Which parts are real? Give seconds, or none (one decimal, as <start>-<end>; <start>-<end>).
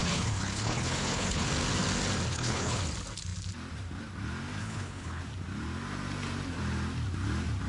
1.5-2.3; 2.8-4.6; 5.2-7.7